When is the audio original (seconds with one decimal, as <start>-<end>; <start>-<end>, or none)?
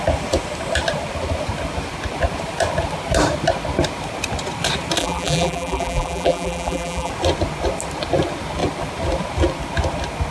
0.0-5.0; 7.1-10.3